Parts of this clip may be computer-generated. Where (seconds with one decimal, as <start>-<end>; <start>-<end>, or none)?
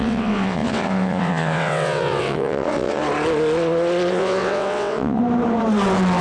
0.0-3.0; 4.1-5.2